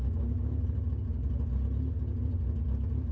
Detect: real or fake real